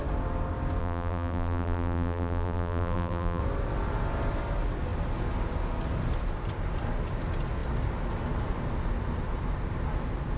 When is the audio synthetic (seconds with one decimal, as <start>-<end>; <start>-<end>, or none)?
0.8-3.4